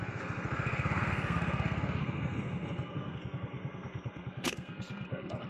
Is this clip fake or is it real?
fake